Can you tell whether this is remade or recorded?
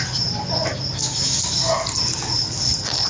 recorded